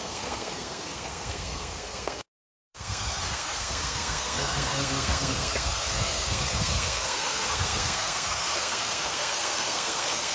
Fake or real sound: fake